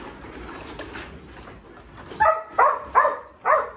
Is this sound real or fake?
real